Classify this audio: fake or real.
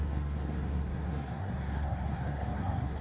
fake